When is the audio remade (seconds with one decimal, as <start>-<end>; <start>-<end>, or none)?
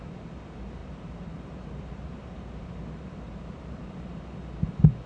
0.8-3.9